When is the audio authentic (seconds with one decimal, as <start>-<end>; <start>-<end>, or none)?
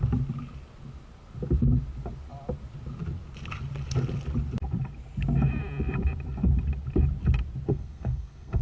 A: 0.0-7.7